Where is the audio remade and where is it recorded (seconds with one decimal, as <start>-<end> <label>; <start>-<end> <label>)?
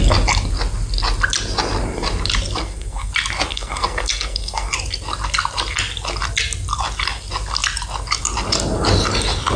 0.0-2.6 recorded; 2.6-3.1 remade; 3.1-3.5 recorded; 3.5-4.7 remade; 4.7-9.6 recorded